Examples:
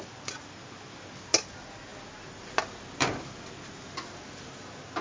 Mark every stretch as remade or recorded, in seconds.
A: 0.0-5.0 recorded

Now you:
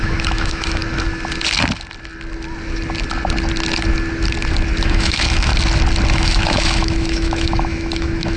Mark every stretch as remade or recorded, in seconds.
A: 0.0-0.8 remade; 0.8-4.8 recorded; 4.8-5.5 remade; 5.5-6.1 recorded; 6.1-8.4 remade

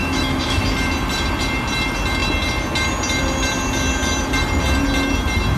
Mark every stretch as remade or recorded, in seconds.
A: 0.0-0.6 remade; 0.6-5.6 recorded

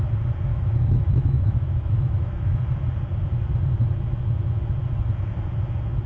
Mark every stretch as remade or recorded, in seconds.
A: 0.0-0.5 recorded; 0.5-2.6 remade; 2.6-6.1 recorded

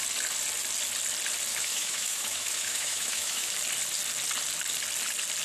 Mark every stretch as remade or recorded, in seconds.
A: 0.0-1.5 recorded; 1.5-3.5 remade; 3.5-5.4 recorded

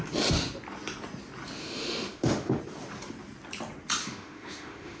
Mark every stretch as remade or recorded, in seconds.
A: 0.0-1.6 recorded; 1.6-2.6 remade; 2.6-4.0 recorded; 4.0-5.0 remade